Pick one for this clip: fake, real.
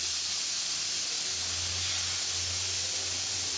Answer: real